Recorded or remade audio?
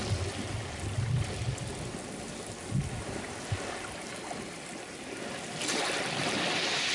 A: recorded